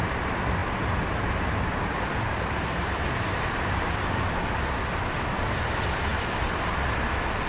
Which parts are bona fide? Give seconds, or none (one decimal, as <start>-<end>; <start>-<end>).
0.0-0.6; 4.2-7.5